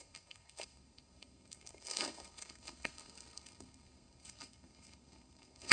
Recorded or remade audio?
remade